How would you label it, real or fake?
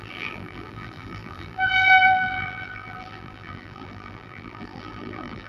fake